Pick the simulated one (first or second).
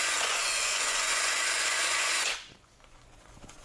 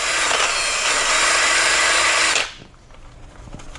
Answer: first